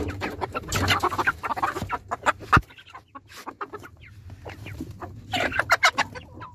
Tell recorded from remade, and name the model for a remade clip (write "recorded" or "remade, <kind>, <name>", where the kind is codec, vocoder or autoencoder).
recorded